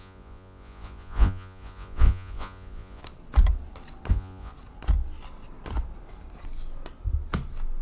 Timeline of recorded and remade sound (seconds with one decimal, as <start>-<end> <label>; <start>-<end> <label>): 0.0-3.0 remade; 3.0-4.1 recorded; 4.1-4.5 remade; 4.5-7.8 recorded